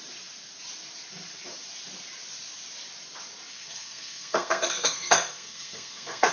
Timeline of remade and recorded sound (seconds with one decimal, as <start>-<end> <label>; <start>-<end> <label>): 0.0-3.5 recorded; 3.5-6.3 remade

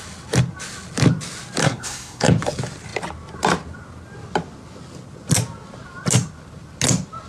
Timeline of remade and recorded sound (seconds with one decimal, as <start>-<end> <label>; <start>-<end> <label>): 0.0-1.6 recorded; 1.6-2.3 remade; 2.3-7.3 recorded

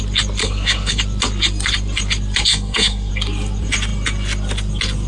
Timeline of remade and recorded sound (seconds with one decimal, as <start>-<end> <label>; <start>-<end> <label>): 0.0-0.4 recorded; 0.4-1.0 remade; 1.0-2.5 recorded; 2.5-3.1 remade; 3.1-5.1 recorded

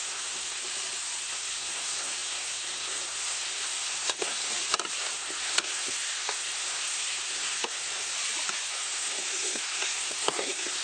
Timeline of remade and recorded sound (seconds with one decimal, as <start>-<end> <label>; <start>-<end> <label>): 0.0-0.6 remade; 0.6-1.2 recorded; 1.2-4.5 remade; 4.5-5.0 recorded; 5.0-8.1 remade; 8.1-8.7 recorded; 8.7-10.8 remade

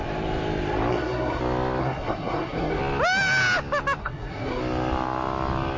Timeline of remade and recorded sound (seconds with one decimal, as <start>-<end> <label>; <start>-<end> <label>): 0.0-0.9 recorded; 0.9-1.4 remade; 1.4-1.8 recorded; 1.8-2.8 remade; 2.8-4.0 recorded; 4.0-4.6 remade; 4.6-5.8 recorded